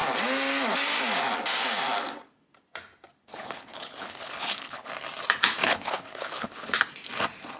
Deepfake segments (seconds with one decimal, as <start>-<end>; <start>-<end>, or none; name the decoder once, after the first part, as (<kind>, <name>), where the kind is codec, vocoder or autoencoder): 3.3-4.9 (codec, HILCodec); 5.6-6.8